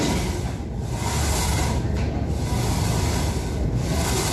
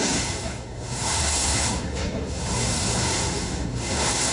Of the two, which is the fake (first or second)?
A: second